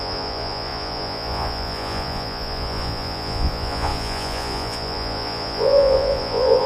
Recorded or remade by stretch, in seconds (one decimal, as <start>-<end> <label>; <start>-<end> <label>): 0.0-6.7 remade